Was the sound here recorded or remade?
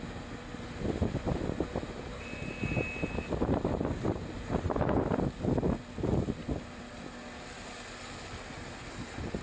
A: recorded